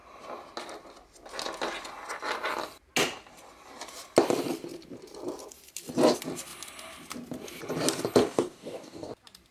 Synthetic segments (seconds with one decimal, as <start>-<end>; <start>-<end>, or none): 8.2-9.1